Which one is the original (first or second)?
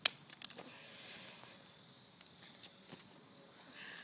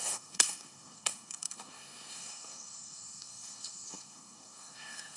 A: first